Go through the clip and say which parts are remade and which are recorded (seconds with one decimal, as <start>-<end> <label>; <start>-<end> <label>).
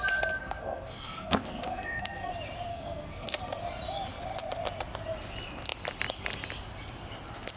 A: 0.0-0.4 recorded; 0.4-2.3 remade; 2.3-2.7 recorded; 2.7-3.6 remade; 3.6-7.6 recorded